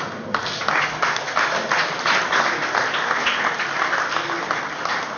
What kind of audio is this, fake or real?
real